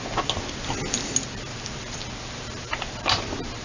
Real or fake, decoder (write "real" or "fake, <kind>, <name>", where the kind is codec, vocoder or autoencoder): real